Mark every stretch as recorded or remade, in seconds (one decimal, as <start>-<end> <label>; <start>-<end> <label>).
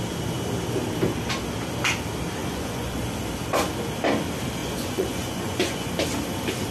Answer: 0.0-2.4 recorded; 2.4-3.0 remade; 3.0-4.6 recorded; 4.6-5.9 remade; 5.9-6.7 recorded